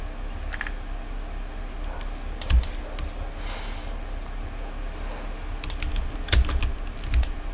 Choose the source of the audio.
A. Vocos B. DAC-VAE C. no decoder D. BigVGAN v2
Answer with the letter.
C